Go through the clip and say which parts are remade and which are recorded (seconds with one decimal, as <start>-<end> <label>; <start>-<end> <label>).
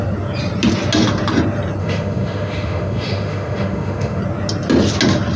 0.0-1.8 recorded; 1.8-4.2 remade; 4.2-5.4 recorded